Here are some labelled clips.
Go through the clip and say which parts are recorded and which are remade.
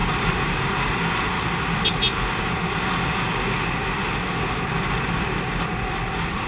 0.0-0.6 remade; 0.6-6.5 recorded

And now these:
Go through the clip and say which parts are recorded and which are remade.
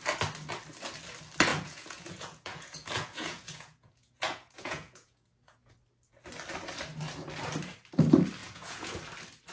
0.0-1.5 recorded; 1.5-5.7 remade; 5.7-8.4 recorded; 8.4-9.0 remade; 9.0-9.5 recorded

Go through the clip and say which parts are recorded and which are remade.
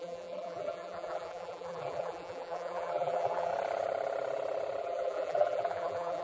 0.0-3.5 remade; 3.5-4.8 recorded; 4.8-6.2 remade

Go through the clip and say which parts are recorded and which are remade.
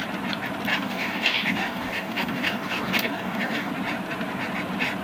0.0-0.7 recorded; 0.7-3.7 remade; 3.7-5.0 recorded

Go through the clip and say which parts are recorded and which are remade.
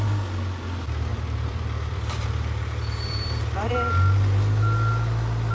0.0-1.1 recorded; 1.1-3.7 remade; 3.7-5.5 recorded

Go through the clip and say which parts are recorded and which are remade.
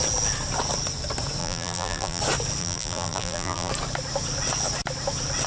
0.0-1.4 recorded; 1.4-2.2 remade; 2.2-2.6 recorded; 2.6-3.7 remade; 3.7-5.5 recorded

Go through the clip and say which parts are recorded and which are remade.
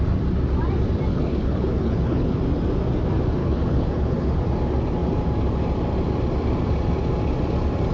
0.0-1.1 recorded; 1.1-2.4 remade; 2.4-3.4 recorded; 3.4-4.4 remade; 4.4-7.9 recorded